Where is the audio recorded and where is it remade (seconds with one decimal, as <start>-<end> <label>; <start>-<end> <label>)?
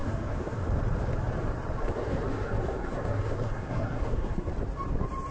0.0-0.7 remade; 0.7-1.8 recorded; 1.8-4.5 remade; 4.5-5.3 recorded